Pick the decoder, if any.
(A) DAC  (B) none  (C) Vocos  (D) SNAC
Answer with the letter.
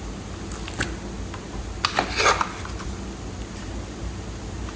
B